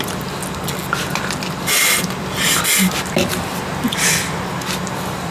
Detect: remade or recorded recorded